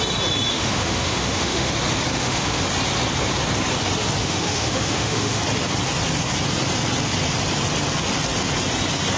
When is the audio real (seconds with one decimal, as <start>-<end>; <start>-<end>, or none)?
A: 0.0-0.5; 1.7-2.1; 2.6-4.2; 5.4-9.2